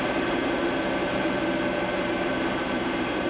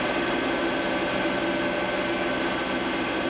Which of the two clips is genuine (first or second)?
second